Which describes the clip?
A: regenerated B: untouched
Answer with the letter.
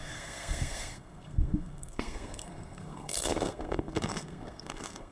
A